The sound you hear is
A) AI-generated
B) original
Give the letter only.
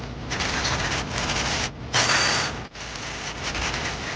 B